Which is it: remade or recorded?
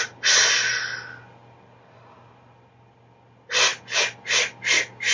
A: recorded